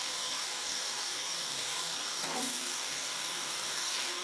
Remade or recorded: remade